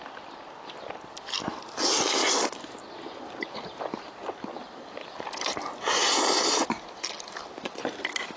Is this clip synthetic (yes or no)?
no